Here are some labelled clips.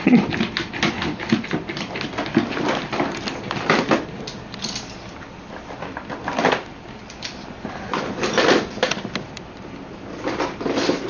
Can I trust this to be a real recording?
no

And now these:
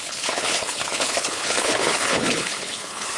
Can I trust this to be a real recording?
no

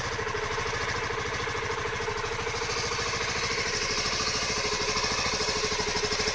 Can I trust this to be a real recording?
yes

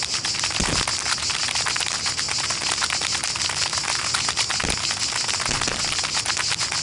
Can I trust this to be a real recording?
yes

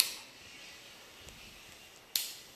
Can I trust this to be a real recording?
yes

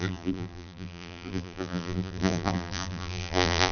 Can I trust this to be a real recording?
no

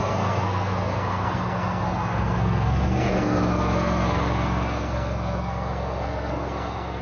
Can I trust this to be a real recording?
no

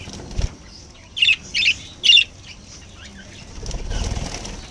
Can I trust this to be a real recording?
yes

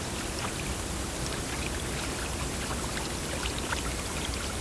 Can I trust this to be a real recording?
yes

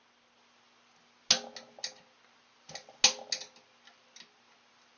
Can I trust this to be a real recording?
yes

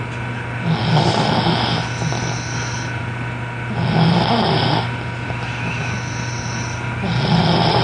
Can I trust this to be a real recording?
yes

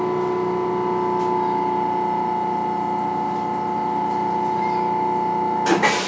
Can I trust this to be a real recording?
yes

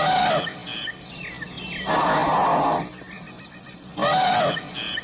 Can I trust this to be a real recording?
yes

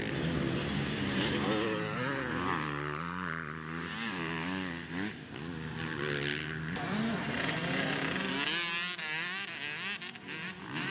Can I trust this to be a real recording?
yes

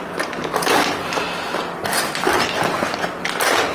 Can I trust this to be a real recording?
yes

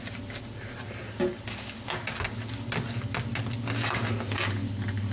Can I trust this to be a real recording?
yes